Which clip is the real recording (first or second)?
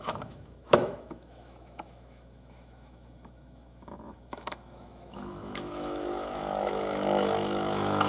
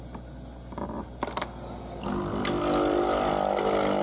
second